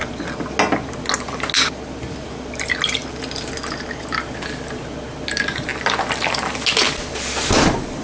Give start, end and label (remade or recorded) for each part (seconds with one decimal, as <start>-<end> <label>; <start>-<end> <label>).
0.0-8.0 recorded